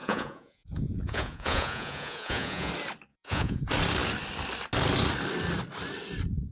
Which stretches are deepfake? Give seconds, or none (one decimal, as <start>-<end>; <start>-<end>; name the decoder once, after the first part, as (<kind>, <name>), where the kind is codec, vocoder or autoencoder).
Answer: 0.0-2.7 (vocoder, Vocos); 3.1-3.6